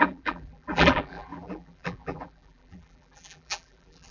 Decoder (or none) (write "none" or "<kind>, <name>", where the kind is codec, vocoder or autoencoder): vocoder, BigVGAN v2